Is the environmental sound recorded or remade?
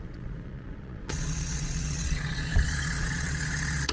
remade